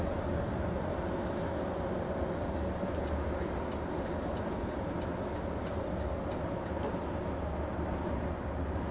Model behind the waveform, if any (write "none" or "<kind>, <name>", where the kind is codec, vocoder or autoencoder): none